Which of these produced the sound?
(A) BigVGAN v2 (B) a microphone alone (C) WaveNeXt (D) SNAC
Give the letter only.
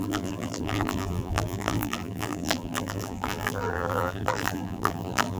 A